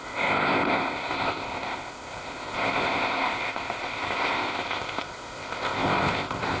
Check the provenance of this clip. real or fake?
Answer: fake